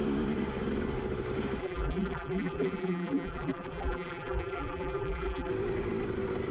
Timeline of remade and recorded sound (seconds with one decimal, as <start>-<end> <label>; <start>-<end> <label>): 0.0-1.6 recorded; 1.6-5.5 remade; 5.5-6.5 recorded